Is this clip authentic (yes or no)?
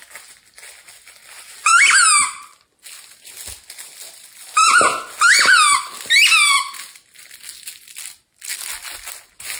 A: yes